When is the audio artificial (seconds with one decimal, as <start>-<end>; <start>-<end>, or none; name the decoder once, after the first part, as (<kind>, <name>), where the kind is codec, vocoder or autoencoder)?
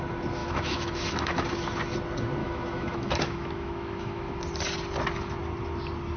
0.4-1.5 (autoencoder, DAC-VAE); 2.4-4.4